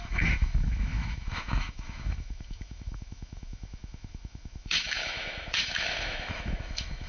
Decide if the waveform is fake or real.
fake